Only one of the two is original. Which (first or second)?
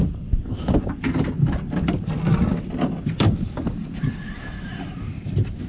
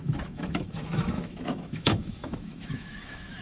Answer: first